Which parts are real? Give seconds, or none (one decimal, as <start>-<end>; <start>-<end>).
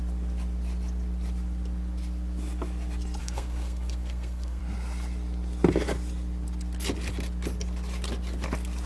0.0-3.2; 4.6-8.9